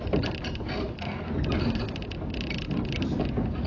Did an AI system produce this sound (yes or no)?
no